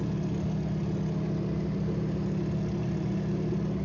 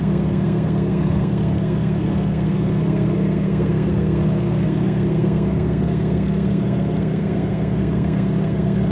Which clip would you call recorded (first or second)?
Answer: first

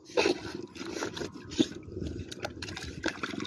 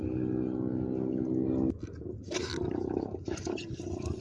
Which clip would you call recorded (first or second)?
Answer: second